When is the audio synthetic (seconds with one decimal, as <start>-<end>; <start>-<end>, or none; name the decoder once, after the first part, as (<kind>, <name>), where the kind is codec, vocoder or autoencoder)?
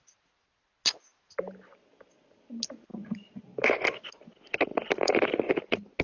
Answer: 4.7-6.0 (vocoder, BigVGAN v2)